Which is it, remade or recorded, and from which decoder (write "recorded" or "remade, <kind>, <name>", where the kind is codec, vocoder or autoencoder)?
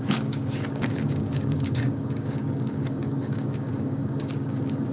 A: remade, codec, DAC